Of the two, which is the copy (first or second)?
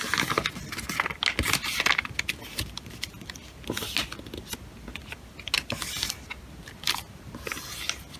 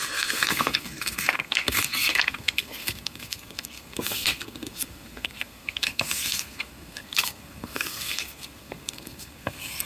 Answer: second